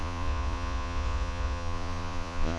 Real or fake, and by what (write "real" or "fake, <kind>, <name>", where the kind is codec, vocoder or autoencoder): fake, vocoder, Vocos